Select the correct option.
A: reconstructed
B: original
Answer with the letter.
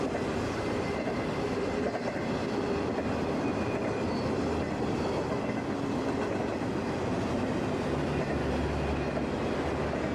B